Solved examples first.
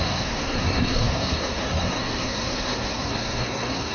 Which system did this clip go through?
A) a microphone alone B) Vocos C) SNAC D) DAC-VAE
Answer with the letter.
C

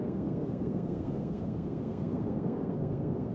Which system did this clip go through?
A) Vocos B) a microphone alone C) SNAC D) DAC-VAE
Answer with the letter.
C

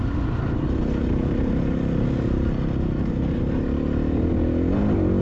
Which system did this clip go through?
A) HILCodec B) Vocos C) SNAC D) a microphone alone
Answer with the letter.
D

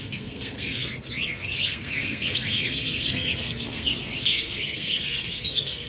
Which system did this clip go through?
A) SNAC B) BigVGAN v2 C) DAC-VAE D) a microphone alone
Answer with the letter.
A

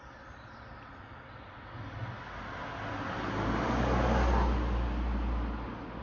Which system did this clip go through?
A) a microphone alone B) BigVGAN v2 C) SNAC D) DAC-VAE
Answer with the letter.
A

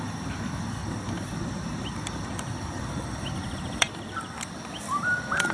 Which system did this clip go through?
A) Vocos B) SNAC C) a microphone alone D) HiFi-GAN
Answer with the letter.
C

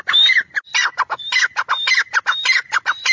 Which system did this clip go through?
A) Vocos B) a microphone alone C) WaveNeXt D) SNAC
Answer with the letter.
B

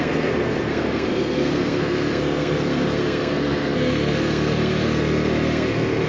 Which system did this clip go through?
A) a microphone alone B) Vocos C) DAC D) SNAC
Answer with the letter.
D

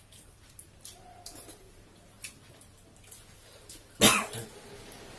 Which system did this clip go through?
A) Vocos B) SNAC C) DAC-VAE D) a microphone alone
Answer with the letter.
D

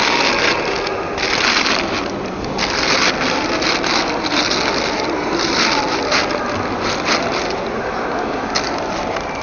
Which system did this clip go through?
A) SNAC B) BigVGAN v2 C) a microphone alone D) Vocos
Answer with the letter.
C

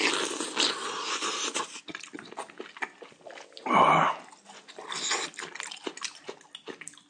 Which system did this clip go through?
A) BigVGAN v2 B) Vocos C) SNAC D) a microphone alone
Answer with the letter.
D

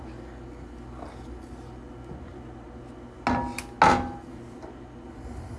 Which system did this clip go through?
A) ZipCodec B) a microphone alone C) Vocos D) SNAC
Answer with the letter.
B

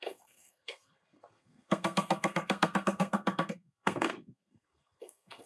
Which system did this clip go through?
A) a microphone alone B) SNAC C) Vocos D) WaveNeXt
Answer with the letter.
B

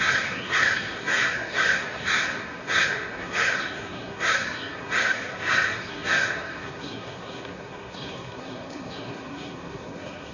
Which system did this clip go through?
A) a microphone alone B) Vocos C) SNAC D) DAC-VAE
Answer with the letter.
C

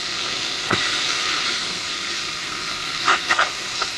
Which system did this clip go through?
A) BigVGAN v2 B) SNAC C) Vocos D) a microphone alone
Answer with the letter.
B